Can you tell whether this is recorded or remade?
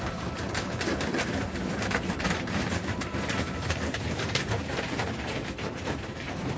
remade